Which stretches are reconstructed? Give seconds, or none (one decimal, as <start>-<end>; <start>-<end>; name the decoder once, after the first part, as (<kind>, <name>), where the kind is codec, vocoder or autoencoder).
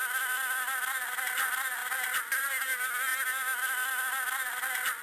none